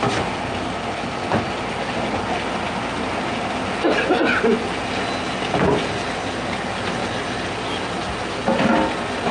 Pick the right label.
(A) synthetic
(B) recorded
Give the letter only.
B